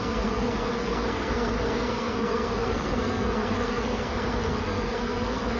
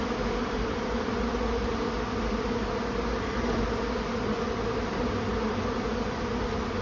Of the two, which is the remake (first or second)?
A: first